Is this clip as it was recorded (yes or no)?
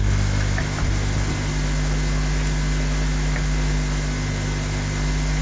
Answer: yes